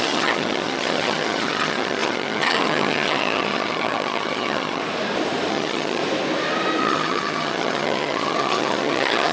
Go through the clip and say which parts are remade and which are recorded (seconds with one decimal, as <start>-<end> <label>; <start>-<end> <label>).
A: 0.0-4.8 remade; 4.8-5.5 recorded; 5.5-6.0 remade; 6.0-6.8 recorded; 6.8-9.3 remade